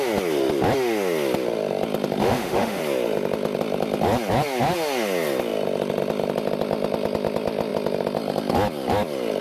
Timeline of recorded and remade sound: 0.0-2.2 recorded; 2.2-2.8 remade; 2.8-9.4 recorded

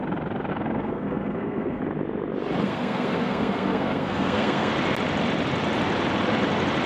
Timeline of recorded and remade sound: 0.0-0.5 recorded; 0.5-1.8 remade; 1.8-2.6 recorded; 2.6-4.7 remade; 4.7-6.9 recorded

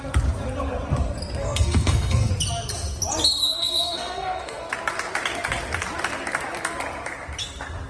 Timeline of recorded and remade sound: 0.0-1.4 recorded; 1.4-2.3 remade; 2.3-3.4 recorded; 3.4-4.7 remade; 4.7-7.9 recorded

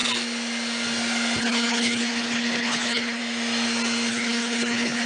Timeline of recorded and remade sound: 0.0-1.4 recorded; 1.4-3.2 remade; 3.2-4.1 recorded; 4.1-5.1 remade

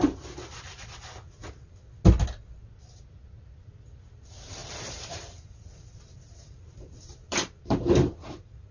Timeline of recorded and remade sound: 0.0-4.6 recorded; 4.6-8.7 remade

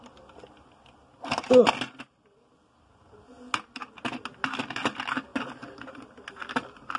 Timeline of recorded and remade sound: 0.0-7.0 recorded